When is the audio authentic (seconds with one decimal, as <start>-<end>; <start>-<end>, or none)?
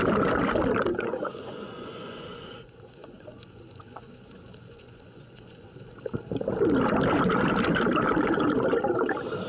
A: 0.0-0.9; 5.9-9.5